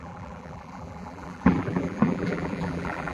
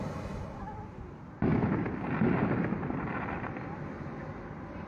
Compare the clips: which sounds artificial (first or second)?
first